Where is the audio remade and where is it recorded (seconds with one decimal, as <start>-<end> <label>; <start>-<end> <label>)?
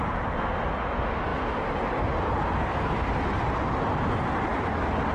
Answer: 0.0-4.5 recorded; 4.5-5.1 remade